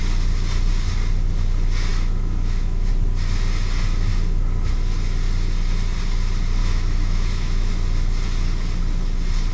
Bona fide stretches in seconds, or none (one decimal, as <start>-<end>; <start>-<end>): 0.0-1.9; 2.9-6.6; 7.7-9.5